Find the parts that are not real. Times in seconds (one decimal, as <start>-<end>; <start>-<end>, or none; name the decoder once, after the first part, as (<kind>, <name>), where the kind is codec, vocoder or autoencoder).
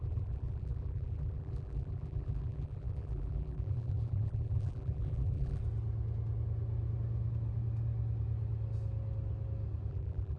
0.0-5.6 (vocoder, BigVGAN v2); 9.9-10.4